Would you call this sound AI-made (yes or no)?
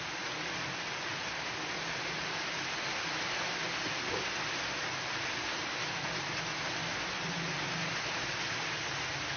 no